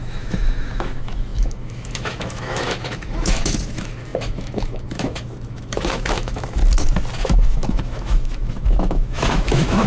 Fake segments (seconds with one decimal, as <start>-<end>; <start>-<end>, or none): 0.0-6.6; 7.2-9.9